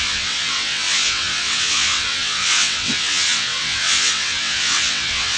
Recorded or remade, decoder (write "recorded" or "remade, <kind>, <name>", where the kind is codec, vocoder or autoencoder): remade, vocoder, WaveNeXt